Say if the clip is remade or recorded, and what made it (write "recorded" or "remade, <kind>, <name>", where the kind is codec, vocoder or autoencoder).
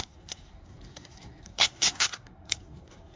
remade, codec, SNAC